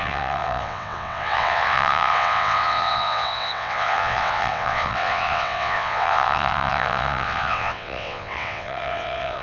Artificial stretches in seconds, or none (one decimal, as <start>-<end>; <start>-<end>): 0.0-9.4